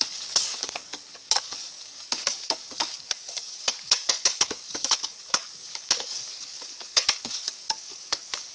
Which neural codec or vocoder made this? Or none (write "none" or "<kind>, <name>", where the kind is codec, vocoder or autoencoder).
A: codec, DAC